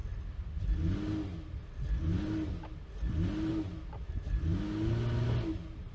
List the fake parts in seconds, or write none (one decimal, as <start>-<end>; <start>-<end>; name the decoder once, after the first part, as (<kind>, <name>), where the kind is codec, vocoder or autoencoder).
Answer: none